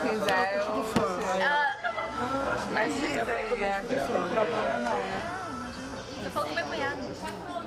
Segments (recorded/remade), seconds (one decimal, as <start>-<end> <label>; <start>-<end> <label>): 0.0-1.7 recorded; 1.7-5.2 remade; 5.2-7.7 recorded